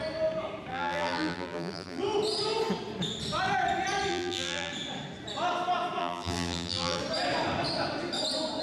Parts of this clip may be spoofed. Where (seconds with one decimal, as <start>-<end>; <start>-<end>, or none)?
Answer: 0.7-2.0; 4.1-4.7; 6.0-7.0